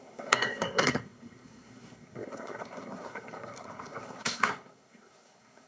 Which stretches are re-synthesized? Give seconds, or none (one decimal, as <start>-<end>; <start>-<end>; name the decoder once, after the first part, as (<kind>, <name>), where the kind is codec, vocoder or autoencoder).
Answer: 0.0-5.7 (codec, SNAC)